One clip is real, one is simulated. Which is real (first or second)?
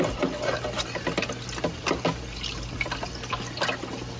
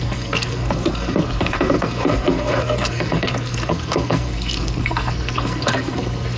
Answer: first